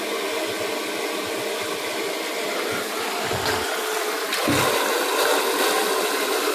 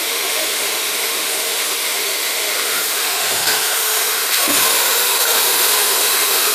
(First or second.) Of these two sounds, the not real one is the second